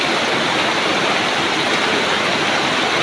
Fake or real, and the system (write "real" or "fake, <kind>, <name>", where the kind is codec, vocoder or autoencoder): real